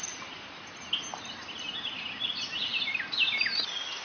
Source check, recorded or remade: recorded